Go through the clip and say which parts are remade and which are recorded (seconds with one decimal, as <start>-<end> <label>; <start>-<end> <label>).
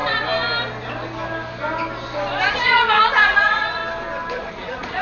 0.0-2.5 recorded; 2.5-3.8 remade; 3.8-4.4 recorded; 4.4-5.0 remade